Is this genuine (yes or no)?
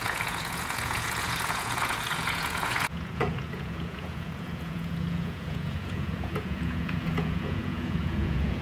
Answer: no